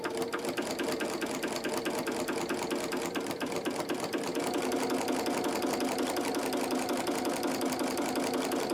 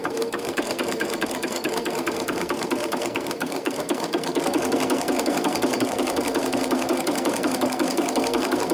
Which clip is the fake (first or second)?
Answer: second